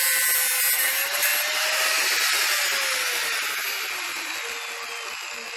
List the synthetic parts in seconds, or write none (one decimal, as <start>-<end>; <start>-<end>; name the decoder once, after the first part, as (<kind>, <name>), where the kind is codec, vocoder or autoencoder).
none